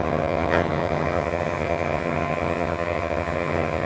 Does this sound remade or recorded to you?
remade